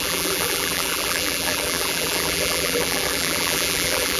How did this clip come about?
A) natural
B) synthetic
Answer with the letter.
B